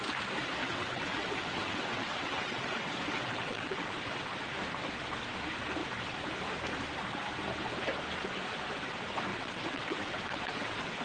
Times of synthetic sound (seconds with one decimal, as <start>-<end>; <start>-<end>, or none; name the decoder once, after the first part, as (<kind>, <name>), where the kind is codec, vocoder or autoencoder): 0.6-3.9 (vocoder, WaveNeXt); 9.3-11.0

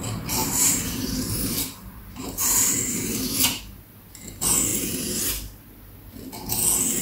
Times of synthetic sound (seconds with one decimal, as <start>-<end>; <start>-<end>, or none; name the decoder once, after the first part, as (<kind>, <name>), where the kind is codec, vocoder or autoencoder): 0.4-3.6 (vocoder, BigVGAN v2); 4.7-5.3

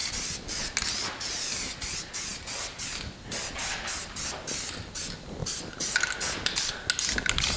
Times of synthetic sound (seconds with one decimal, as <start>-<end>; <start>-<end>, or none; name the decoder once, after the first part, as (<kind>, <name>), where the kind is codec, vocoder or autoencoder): 5.4-6.1 (vocoder, BigVGAN v2)

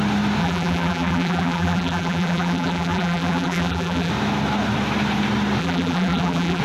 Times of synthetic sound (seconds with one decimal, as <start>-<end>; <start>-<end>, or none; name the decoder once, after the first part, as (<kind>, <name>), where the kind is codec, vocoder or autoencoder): 0.4-4.1 (vocoder, BigVGAN v2); 5.6-6.6

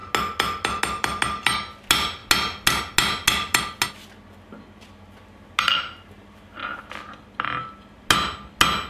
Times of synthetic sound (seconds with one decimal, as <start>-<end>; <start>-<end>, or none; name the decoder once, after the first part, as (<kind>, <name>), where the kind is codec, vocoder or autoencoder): none

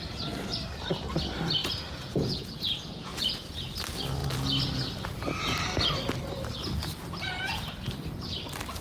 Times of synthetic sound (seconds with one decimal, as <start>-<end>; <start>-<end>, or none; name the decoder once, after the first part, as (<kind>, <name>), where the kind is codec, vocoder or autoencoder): 1.6-3.7 (vocoder, Vocos)